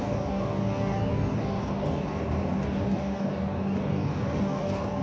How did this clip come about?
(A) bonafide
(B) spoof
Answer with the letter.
B